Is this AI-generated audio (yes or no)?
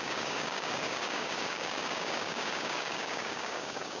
yes